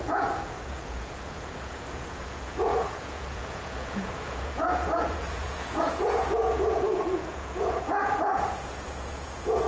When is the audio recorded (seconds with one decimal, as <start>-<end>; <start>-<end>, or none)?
none